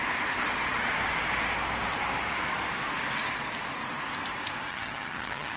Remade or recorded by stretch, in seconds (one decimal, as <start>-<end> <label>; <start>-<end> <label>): 0.0-4.7 recorded; 4.7-5.6 remade